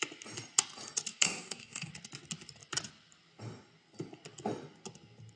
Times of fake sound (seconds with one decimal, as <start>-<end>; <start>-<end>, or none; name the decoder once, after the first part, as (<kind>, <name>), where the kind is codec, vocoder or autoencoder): 1.1-1.9 (codec, DAC)